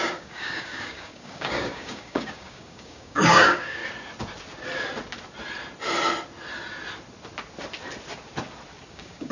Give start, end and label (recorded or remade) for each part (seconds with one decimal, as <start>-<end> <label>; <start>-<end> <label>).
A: 0.0-3.8 remade; 3.8-8.9 recorded; 8.9-9.3 remade